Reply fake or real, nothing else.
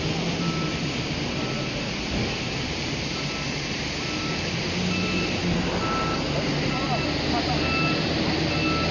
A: real